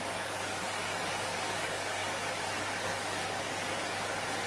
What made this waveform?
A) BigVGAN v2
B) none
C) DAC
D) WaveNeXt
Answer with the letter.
C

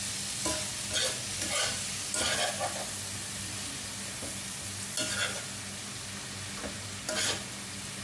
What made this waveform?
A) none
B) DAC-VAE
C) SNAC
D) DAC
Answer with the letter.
A